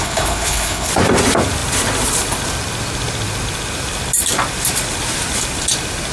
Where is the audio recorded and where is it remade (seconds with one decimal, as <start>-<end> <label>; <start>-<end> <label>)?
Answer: 0.0-0.9 remade; 0.9-6.1 recorded

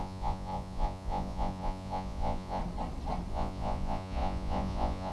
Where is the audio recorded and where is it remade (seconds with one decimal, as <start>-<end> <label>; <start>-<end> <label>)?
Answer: 0.0-2.6 remade; 2.6-3.3 recorded; 3.3-5.1 remade

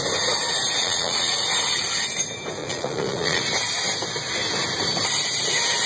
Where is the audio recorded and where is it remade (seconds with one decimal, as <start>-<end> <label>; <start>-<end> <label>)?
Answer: 0.0-0.8 recorded; 0.8-1.4 remade; 1.4-2.6 recorded; 2.6-3.4 remade; 3.4-5.9 recorded

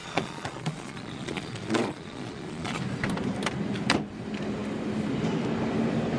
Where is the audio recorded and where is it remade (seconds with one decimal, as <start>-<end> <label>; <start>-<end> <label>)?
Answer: 0.0-2.8 remade; 2.8-6.2 recorded

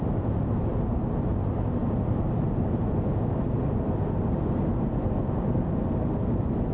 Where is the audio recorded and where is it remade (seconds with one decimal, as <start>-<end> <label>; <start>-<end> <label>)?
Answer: 0.0-6.7 recorded